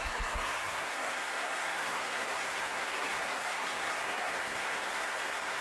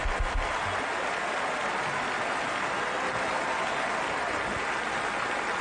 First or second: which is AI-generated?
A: first